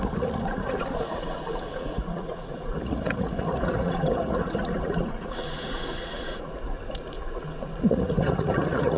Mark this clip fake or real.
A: fake